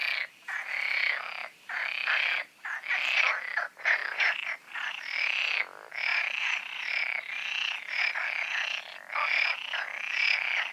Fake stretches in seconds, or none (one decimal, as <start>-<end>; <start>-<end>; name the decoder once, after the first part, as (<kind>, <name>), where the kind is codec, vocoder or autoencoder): 1.4-2.1 (vocoder, BigVGAN v2); 4.0-5.2; 6.1-7.3